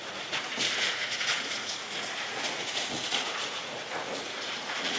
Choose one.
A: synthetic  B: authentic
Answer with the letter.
A